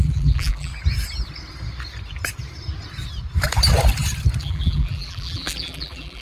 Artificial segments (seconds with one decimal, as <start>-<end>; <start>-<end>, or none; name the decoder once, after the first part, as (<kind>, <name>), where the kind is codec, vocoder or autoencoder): 0.0-0.7 (vocoder, BigVGAN v2); 4.4-6.2